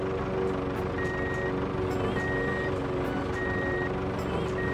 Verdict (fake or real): real